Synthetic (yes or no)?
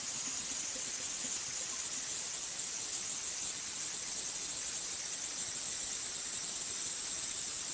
no